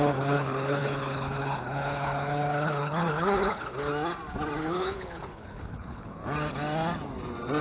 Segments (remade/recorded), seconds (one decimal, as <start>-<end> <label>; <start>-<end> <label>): 0.0-3.9 remade; 3.9-4.6 recorded; 4.6-6.2 remade; 6.2-7.6 recorded